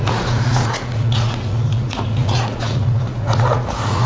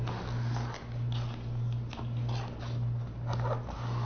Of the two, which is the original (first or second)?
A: second